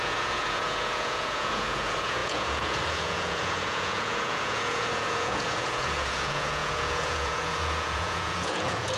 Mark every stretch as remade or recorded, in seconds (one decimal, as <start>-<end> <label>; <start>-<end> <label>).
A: 0.0-9.0 remade